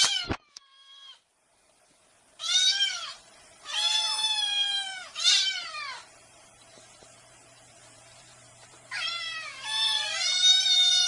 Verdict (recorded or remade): remade